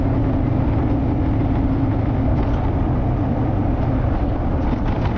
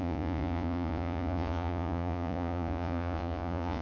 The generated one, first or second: second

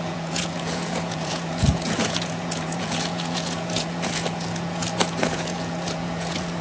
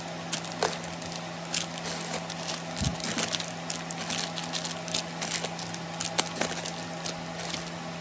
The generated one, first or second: first